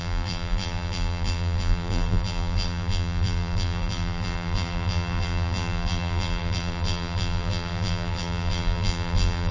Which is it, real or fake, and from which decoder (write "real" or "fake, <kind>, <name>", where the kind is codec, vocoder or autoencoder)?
fake, vocoder, BigVGAN v2